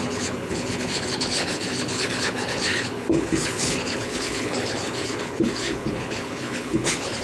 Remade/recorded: remade